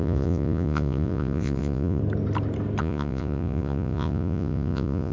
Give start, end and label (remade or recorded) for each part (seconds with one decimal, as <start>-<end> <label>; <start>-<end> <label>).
0.0-2.0 remade; 2.0-2.8 recorded; 2.8-5.1 remade